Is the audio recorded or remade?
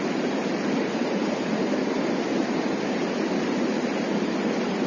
recorded